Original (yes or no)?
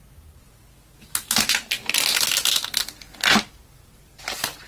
yes